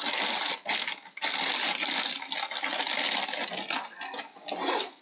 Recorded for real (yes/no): yes